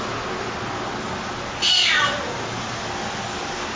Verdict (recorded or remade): recorded